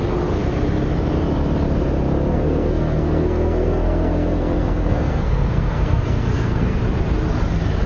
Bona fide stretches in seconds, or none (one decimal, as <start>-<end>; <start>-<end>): 0.0-2.3; 6.8-7.9